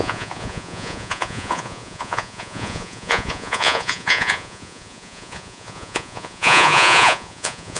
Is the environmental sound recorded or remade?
remade